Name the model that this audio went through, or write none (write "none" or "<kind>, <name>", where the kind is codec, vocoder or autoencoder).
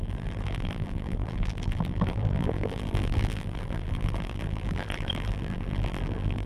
vocoder, BigVGAN v2